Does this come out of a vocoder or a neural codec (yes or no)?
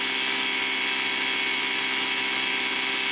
no